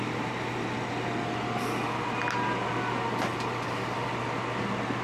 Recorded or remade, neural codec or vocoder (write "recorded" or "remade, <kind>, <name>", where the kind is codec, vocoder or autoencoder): recorded